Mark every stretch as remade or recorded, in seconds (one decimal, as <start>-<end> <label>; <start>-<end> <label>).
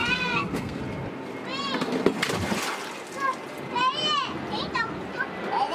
0.0-0.8 remade; 0.8-5.7 recorded